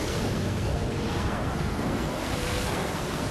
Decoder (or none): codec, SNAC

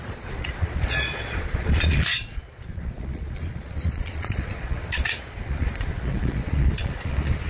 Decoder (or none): vocoder, Vocos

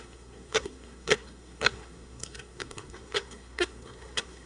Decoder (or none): codec, SNAC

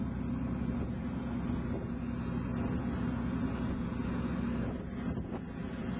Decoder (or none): none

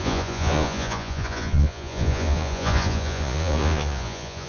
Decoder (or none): vocoder, Vocos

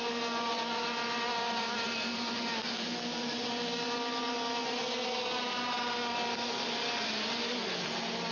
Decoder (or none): none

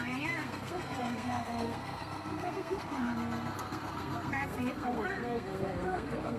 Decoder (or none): codec, SNAC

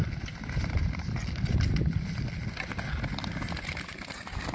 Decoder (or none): none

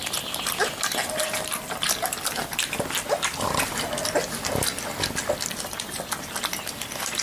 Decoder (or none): none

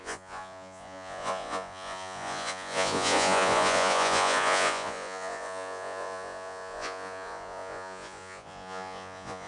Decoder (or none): vocoder, Vocos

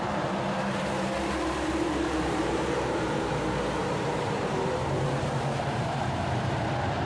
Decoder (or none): vocoder, BigVGAN v2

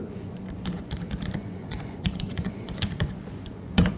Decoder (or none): vocoder, Vocos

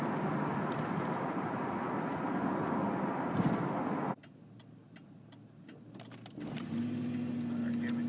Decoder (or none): none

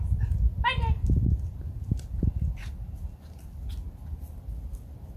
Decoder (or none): none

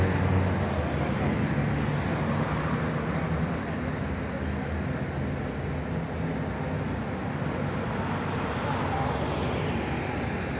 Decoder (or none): none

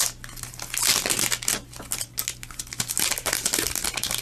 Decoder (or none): none